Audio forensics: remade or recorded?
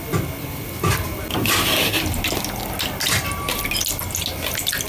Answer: recorded